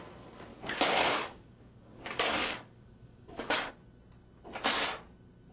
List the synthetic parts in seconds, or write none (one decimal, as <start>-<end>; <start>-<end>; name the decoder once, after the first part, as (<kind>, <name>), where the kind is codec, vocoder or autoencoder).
0.5-3.7 (codec, DAC)